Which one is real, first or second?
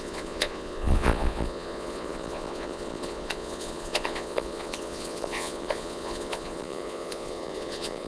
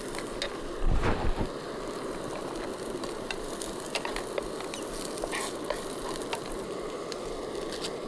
second